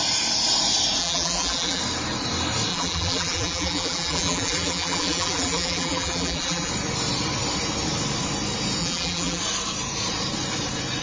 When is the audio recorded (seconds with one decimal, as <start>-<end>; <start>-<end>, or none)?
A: 0.0-1.0; 1.8-2.7; 6.7-8.8; 9.4-11.0